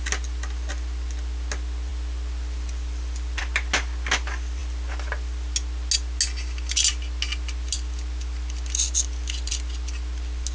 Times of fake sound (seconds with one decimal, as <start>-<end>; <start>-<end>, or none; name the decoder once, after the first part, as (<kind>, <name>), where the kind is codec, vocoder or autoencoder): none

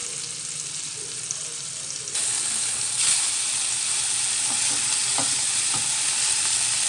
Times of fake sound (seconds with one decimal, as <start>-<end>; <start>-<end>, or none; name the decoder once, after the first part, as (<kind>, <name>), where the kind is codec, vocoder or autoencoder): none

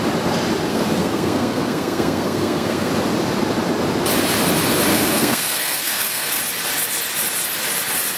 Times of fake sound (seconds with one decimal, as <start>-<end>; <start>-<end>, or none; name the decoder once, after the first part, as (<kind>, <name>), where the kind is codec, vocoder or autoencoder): 0.7-2.9 (codec, SNAC); 4.9-6.4